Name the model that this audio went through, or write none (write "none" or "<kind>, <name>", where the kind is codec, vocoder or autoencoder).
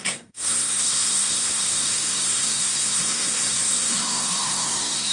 codec, SNAC